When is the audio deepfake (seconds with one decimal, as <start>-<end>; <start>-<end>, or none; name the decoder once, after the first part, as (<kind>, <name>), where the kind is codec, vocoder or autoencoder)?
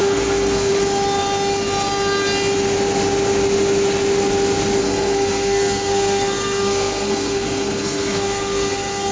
0.0-0.7 (codec, SNAC); 4.8-9.1